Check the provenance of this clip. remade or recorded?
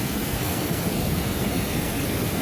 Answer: remade